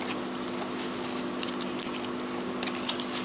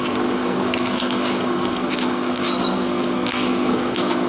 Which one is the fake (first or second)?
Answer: second